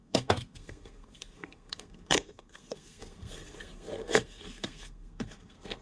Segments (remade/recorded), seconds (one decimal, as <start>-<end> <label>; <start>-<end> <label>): 0.0-5.8 remade